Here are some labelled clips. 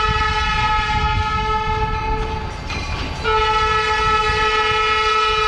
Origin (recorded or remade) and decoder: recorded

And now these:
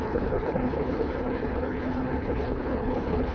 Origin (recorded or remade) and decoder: remade, codec, HILCodec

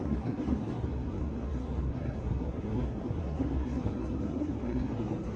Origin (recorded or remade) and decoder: remade, codec, SNAC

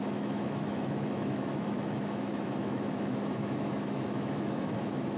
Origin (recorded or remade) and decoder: remade, autoencoder, DAC-VAE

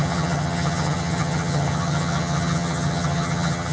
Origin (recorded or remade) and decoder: remade, vocoder, HiFi-GAN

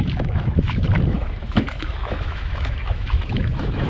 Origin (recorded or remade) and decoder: remade, autoencoder, DAC-VAE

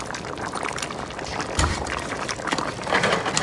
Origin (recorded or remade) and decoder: remade, vocoder, BigVGAN v2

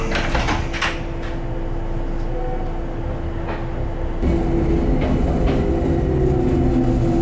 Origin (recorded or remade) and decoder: recorded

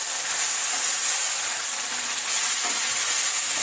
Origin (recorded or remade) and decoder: recorded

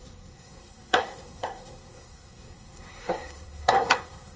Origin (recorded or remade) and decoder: remade, codec, SNAC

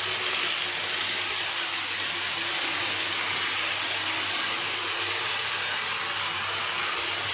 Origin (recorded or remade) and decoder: recorded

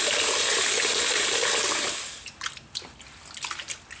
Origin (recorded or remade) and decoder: recorded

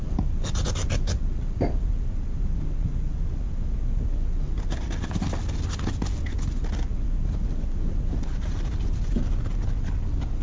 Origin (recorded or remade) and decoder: recorded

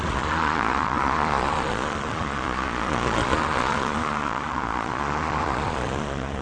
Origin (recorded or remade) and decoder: remade, vocoder, Vocos